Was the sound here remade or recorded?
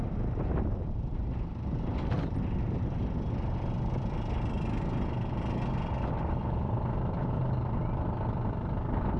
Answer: recorded